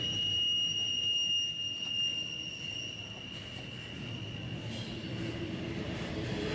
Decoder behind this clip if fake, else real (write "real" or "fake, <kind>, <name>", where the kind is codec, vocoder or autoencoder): real